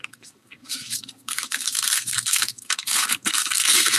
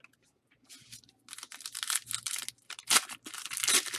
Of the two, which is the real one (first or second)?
second